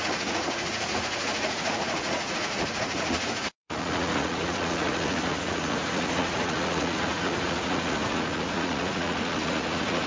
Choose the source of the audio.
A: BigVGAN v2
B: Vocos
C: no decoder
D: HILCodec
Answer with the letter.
B